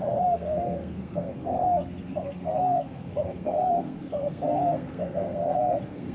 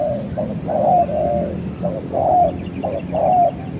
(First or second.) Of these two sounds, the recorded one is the second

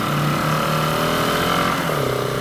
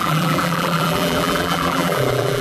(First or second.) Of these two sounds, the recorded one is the first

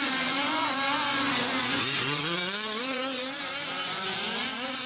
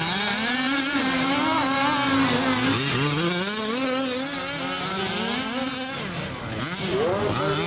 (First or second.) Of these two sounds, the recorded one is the second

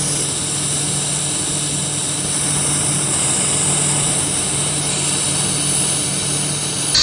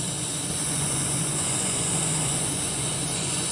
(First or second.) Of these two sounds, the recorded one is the first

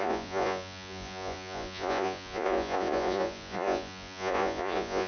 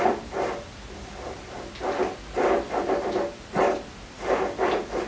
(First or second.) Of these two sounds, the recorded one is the second